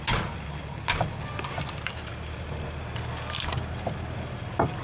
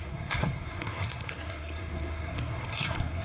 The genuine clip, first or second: first